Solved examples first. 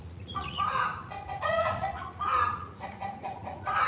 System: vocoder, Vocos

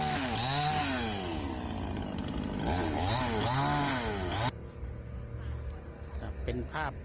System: none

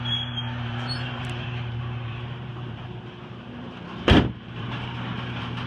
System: vocoder, BigVGAN v2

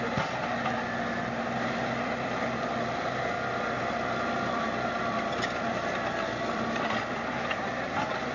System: vocoder, BigVGAN v2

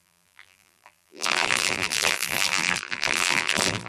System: vocoder, BigVGAN v2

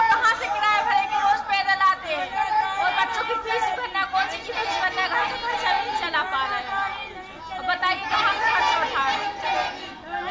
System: none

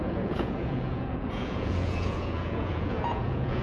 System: vocoder, Vocos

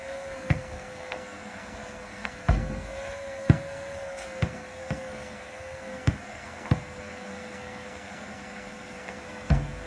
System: codec, SNAC